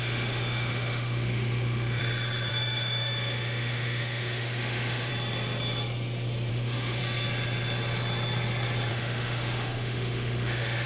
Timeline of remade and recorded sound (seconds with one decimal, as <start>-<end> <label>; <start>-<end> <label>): 0.0-2.0 remade; 2.0-2.5 recorded; 2.5-5.1 remade; 5.1-6.5 recorded; 6.5-7.0 remade; 7.0-8.9 recorded; 8.9-10.9 remade